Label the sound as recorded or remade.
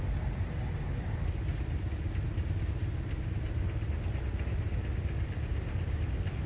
recorded